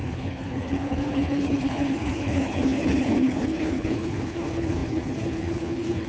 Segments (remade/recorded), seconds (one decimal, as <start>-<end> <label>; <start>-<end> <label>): 0.0-6.1 remade